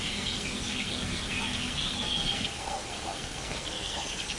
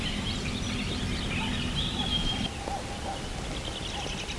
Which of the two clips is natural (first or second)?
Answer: second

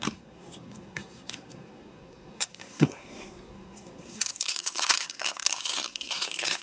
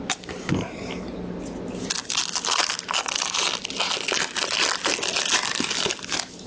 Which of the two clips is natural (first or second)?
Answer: second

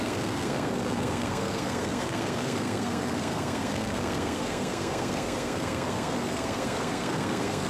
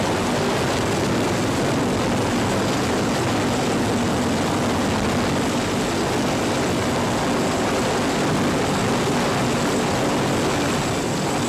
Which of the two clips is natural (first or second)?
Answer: second